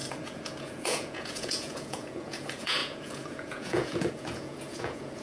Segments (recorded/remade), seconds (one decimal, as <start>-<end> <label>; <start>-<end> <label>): 0.0-5.2 remade